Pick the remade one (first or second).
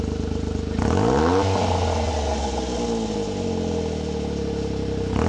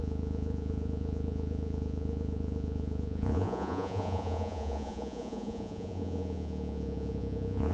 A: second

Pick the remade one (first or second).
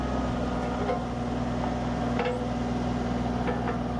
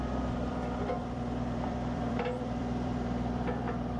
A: second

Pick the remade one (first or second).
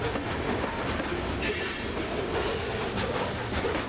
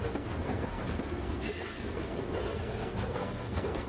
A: second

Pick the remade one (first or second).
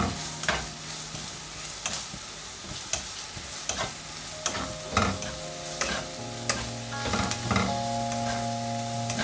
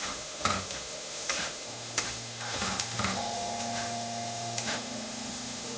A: second